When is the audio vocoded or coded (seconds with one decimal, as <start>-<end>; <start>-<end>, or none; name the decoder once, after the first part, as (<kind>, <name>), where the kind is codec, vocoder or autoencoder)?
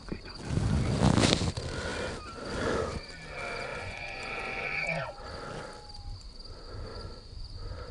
3.7-5.3 (vocoder, Vocos); 6.9-7.5